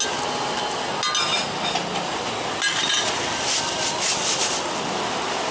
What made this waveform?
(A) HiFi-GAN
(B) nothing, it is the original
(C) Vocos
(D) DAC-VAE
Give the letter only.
B